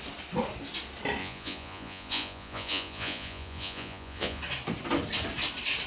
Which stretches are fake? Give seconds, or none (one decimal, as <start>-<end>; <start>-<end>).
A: 1.2-4.4